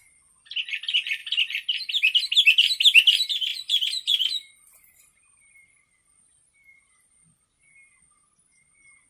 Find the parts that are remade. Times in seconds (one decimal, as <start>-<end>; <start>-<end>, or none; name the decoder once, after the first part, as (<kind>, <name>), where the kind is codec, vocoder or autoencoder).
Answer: 1.2-2.2 (vocoder, BigVGAN v2); 3.5-8.0